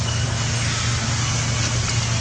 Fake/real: real